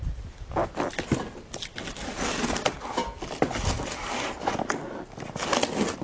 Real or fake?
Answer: real